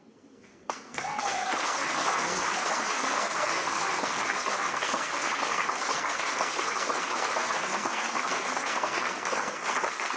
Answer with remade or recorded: remade